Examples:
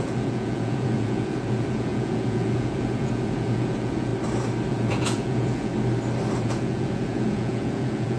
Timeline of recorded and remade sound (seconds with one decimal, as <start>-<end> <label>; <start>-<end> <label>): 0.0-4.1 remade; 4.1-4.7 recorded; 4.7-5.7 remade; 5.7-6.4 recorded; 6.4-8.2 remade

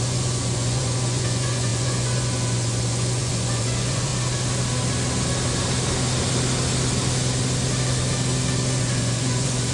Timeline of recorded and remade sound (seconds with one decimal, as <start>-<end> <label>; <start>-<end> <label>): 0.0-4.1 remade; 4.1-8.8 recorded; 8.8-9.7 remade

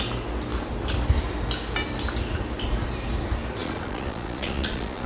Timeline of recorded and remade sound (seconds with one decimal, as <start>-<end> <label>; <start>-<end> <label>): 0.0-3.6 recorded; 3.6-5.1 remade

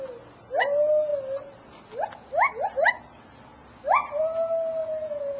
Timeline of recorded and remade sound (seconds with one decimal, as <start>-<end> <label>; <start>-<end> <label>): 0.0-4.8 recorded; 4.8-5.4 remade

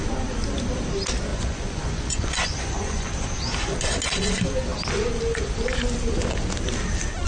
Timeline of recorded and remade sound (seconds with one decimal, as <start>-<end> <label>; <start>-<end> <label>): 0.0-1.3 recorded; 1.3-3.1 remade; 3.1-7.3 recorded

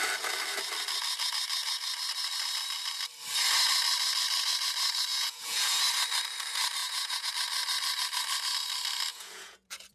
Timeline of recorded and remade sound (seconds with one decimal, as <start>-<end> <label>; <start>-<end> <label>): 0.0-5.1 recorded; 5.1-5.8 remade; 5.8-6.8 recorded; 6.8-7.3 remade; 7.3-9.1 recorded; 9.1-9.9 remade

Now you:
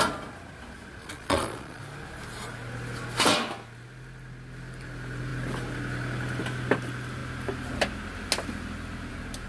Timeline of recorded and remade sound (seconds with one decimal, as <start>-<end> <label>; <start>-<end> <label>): 0.0-1.0 recorded; 1.0-1.8 remade; 1.8-9.5 recorded

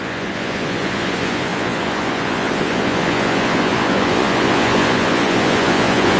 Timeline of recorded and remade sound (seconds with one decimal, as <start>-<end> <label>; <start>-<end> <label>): 0.0-6.2 remade